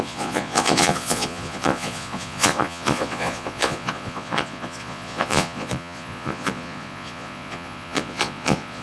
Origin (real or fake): fake